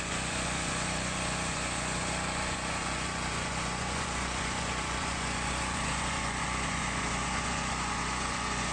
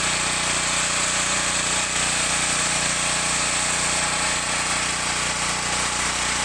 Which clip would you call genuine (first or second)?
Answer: second